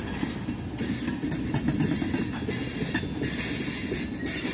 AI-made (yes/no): no